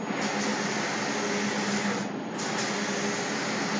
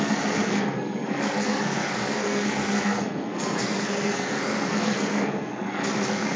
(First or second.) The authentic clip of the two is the first